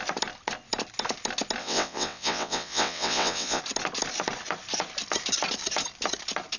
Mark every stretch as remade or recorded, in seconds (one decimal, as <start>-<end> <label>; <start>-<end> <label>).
0.0-1.6 recorded; 1.6-3.6 remade; 3.6-6.6 recorded